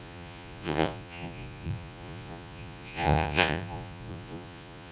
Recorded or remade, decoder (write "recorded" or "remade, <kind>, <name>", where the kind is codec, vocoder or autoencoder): remade, vocoder, Vocos